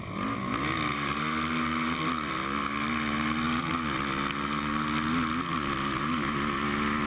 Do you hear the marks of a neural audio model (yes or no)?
no